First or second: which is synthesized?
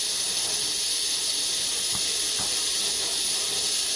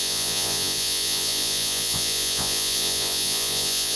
second